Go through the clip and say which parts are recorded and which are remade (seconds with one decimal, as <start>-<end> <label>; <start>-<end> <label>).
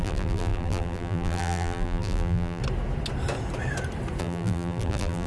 0.0-2.6 remade; 2.6-4.2 recorded; 4.2-5.3 remade